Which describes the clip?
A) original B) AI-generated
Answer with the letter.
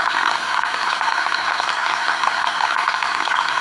B